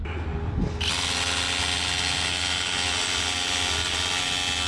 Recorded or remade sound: recorded